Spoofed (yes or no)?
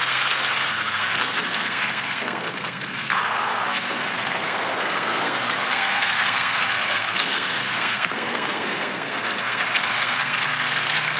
yes